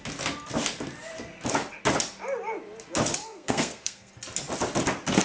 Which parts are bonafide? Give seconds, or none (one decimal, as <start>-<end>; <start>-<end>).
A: 0.0-3.2; 4.1-5.2